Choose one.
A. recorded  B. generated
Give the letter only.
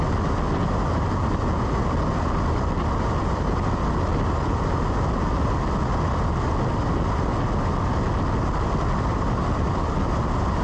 A